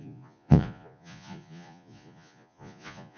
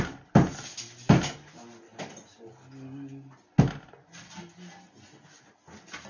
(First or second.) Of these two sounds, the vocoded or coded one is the first